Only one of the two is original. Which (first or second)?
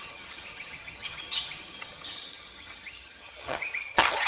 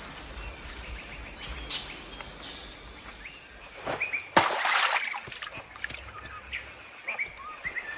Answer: second